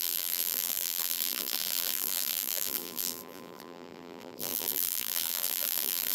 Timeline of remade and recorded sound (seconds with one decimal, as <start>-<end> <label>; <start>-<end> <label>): 0.0-6.1 remade